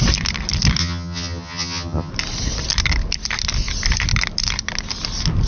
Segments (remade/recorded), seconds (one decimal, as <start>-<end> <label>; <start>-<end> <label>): 0.0-0.8 recorded; 0.8-2.1 remade; 2.1-5.5 recorded